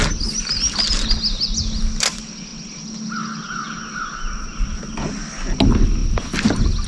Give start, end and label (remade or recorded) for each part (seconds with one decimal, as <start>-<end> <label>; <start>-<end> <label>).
0.0-6.9 recorded